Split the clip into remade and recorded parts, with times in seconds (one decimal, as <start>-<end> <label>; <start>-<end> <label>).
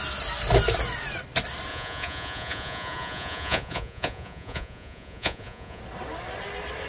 0.0-1.7 recorded; 1.7-5.8 remade; 5.8-6.9 recorded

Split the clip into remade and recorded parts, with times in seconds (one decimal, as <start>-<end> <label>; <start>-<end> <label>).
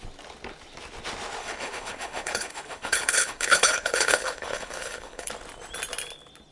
0.0-1.4 recorded; 1.4-5.3 remade; 5.3-6.5 recorded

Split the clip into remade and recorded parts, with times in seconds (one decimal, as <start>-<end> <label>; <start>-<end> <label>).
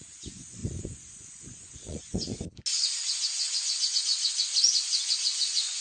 0.0-2.4 remade; 2.4-3.1 recorded; 3.1-4.1 remade; 4.1-4.9 recorded; 4.9-5.8 remade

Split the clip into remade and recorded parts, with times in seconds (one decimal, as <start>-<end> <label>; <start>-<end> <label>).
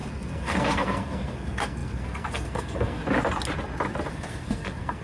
0.0-3.0 remade; 3.0-4.1 recorded; 4.1-5.0 remade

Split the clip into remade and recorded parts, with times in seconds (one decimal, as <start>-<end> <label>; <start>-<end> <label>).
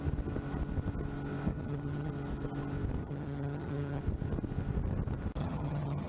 0.0-1.5 recorded; 1.5-2.1 remade; 2.1-3.0 recorded; 3.0-4.0 remade; 4.0-5.4 recorded; 5.4-6.1 remade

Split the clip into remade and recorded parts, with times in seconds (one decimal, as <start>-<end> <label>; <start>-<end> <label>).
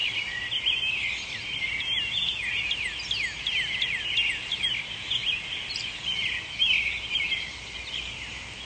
0.0-8.7 recorded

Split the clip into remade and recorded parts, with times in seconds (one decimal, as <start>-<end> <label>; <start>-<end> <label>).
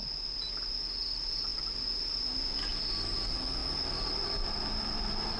0.0-3.6 recorded; 3.6-4.1 remade; 4.1-5.4 recorded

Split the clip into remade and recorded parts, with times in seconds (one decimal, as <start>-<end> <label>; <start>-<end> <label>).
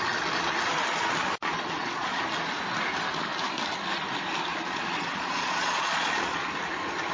0.0-1.4 recorded; 1.4-2.2 remade; 2.2-4.5 recorded; 4.5-6.5 remade; 6.5-7.1 recorded